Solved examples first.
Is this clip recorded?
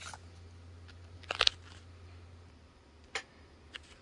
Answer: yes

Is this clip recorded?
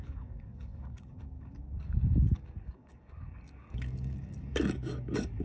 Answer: no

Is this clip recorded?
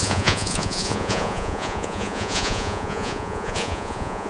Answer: no